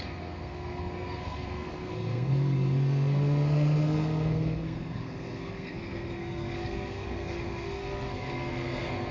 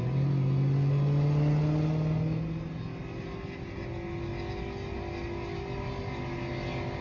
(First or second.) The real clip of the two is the second